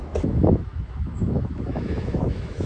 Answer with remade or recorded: remade